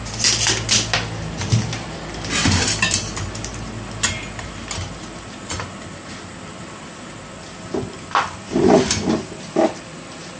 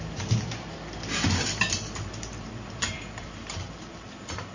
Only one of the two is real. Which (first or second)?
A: first